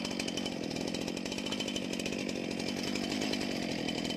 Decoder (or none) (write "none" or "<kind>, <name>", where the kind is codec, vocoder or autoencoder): none